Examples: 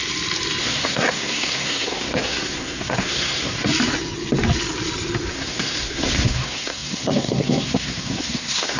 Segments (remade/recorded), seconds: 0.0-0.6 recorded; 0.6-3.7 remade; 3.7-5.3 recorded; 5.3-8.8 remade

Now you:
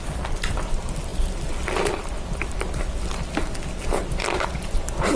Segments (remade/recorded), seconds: 0.0-5.2 recorded

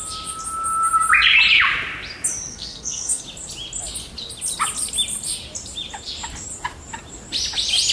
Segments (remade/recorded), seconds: 0.0-2.5 recorded; 2.5-3.2 remade; 3.2-7.9 recorded

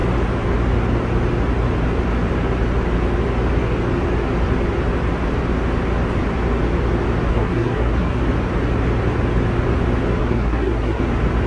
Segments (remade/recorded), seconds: 0.0-7.3 recorded; 7.3-8.2 remade; 8.2-10.2 recorded; 10.2-11.0 remade; 11.0-11.5 recorded

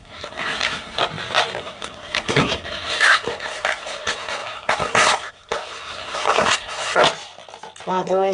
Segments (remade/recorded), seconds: 0.0-1.0 remade; 1.0-1.6 recorded; 1.6-7.0 remade; 7.0-7.9 recorded; 7.9-8.3 remade